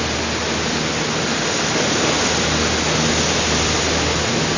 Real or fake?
real